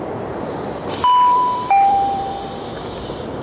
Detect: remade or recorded remade